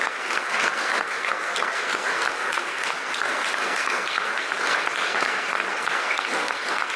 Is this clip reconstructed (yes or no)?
yes